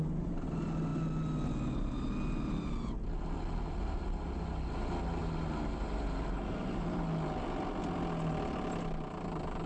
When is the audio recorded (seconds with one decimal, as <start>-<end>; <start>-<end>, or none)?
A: 0.0-5.2; 7.0-9.7